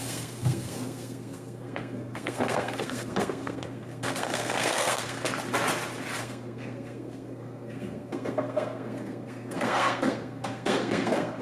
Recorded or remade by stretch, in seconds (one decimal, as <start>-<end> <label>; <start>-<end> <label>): 0.0-5.3 remade; 5.3-6.2 recorded; 6.2-11.4 remade